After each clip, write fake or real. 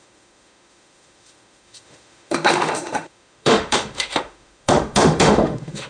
fake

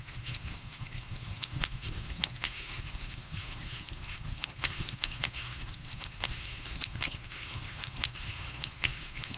fake